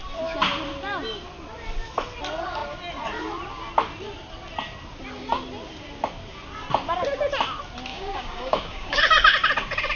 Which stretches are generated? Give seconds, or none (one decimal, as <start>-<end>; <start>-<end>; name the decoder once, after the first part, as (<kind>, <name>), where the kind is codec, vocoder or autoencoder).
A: 7.9-9.0 (codec, DAC)